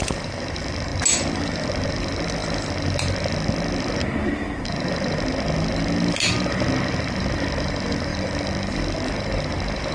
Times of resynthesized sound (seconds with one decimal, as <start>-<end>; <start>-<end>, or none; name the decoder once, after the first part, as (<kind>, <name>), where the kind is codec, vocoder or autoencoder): none